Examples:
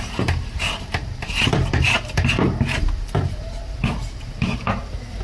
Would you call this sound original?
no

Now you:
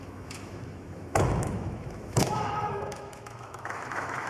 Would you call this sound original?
no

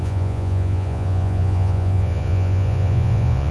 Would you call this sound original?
no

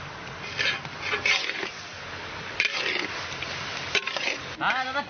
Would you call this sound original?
yes